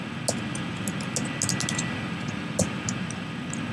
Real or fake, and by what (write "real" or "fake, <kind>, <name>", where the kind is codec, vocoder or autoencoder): real